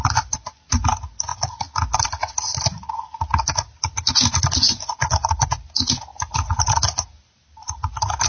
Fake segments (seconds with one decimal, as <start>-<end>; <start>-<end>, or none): none